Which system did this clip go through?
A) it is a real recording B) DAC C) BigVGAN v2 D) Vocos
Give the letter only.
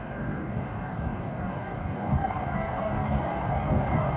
B